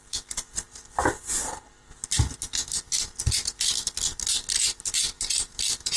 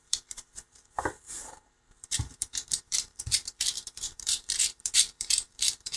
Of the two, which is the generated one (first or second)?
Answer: second